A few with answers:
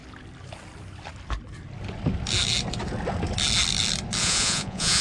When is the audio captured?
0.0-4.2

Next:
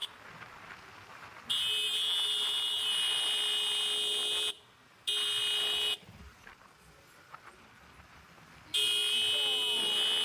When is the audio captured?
0.0-10.2

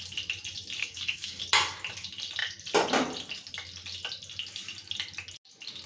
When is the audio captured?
0.0-0.8; 1.4-5.9